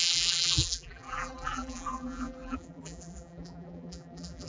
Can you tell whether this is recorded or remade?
remade